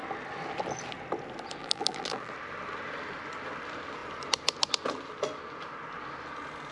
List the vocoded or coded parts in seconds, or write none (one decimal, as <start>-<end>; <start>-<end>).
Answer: 1.6-2.3